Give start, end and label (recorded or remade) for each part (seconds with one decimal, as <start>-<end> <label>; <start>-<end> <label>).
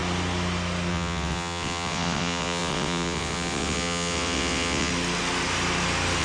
0.0-0.9 recorded; 0.9-4.9 remade; 4.9-6.2 recorded